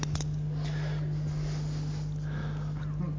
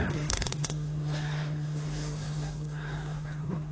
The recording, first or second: first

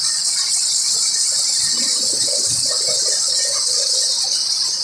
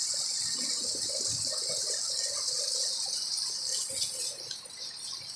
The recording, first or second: second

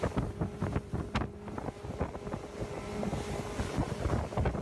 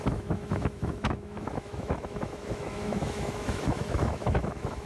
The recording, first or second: first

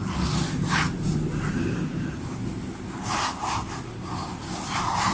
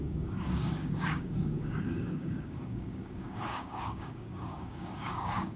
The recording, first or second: first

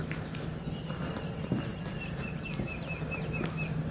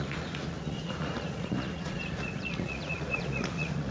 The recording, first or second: first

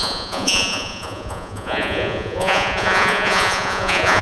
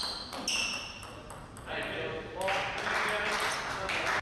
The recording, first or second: second